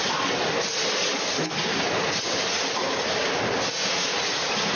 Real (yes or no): yes